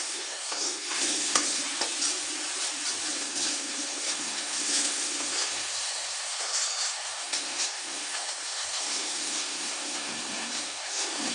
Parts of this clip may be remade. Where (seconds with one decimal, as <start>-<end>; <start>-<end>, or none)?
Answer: 0.0-1.6; 3.1-11.3